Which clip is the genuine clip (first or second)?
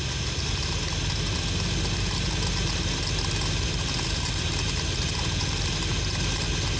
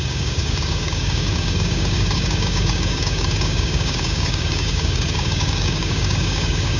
first